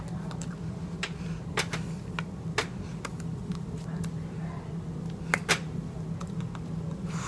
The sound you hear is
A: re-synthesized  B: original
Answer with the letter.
B